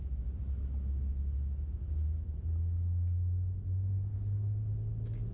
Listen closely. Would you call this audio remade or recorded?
recorded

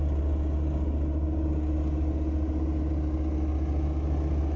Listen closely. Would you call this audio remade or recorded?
recorded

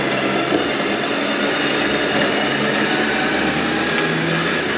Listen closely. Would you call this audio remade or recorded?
recorded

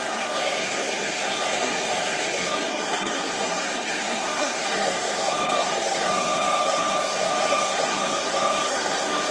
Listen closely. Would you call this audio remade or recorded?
remade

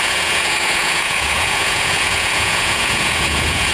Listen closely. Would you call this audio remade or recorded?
remade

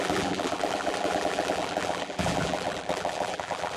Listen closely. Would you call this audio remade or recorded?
remade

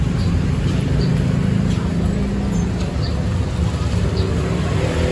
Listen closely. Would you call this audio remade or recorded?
recorded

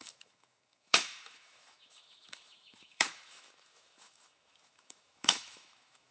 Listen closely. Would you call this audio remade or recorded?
remade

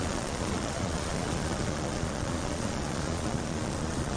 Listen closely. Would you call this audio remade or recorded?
remade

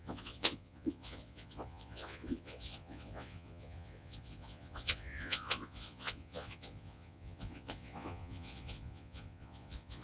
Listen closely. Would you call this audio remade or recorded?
remade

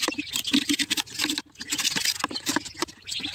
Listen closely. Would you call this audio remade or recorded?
recorded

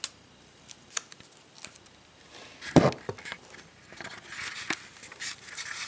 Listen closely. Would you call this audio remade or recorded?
recorded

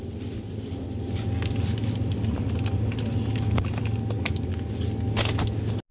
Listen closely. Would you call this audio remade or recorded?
recorded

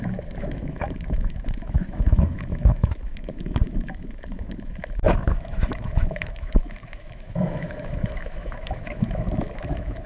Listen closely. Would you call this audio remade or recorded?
remade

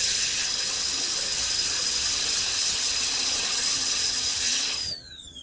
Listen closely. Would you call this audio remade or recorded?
remade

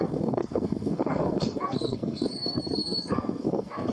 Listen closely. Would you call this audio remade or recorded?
remade